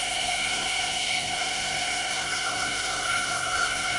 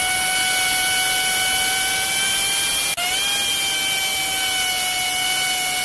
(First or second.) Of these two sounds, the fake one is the first